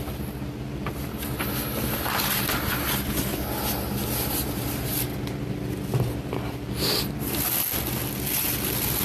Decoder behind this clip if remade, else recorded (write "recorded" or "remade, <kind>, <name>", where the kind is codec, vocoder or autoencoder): recorded